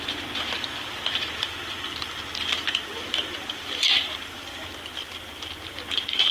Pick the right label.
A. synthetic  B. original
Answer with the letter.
B